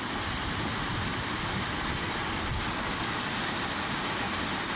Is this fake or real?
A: real